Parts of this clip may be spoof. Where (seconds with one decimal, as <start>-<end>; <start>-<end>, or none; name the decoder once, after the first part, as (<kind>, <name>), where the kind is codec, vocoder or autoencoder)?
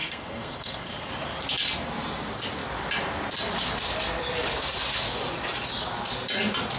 0.0-1.1 (codec, SNAC)